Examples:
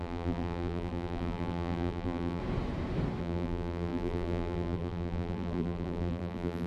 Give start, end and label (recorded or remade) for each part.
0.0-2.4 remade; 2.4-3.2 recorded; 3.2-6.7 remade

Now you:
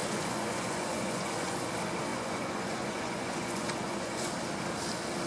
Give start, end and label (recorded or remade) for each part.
0.0-1.7 remade; 1.7-2.1 recorded; 2.1-4.3 remade; 4.3-5.3 recorded

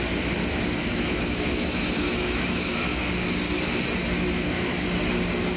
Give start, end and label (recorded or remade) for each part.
0.0-0.8 recorded; 0.8-3.1 remade; 3.1-5.6 recorded

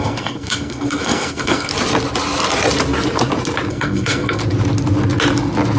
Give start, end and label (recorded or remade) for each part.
0.0-1.7 remade; 1.7-3.7 recorded; 3.7-4.4 remade; 4.4-5.8 recorded

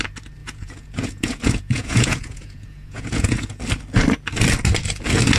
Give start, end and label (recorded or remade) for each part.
0.0-0.4 recorded; 0.4-3.6 remade; 3.6-5.4 recorded

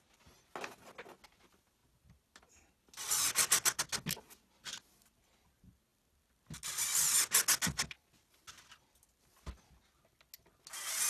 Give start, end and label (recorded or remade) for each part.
0.0-11.1 recorded

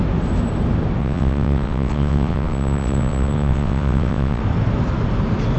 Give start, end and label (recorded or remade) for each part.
0.0-1.0 recorded; 1.0-4.4 remade; 4.4-5.6 recorded

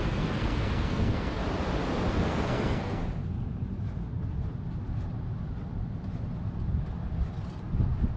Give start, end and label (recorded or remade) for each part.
0.0-1.4 remade; 1.4-2.1 recorded; 2.1-3.0 remade; 3.0-8.2 recorded